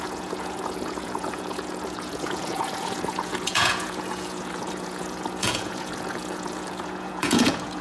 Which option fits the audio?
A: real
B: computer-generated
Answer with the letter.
B